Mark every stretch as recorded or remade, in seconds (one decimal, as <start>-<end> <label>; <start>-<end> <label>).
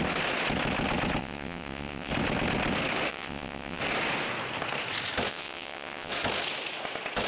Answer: 0.0-1.2 recorded; 1.2-2.1 remade; 2.1-3.1 recorded; 3.1-3.8 remade; 3.8-5.3 recorded; 5.3-6.1 remade; 6.1-7.3 recorded